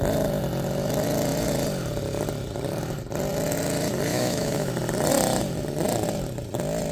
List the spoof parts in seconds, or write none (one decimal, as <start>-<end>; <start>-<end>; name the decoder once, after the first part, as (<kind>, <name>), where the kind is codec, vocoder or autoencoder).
4.1-4.7 (autoencoder, DAC-VAE)